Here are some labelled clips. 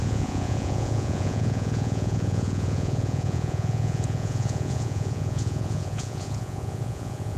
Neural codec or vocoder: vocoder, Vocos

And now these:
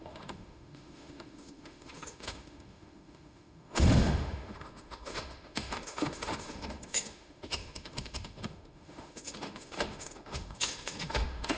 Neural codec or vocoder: autoencoder, DAC-VAE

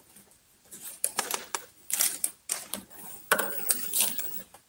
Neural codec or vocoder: vocoder, BigVGAN v2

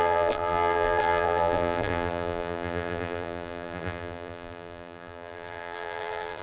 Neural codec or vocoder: vocoder, BigVGAN v2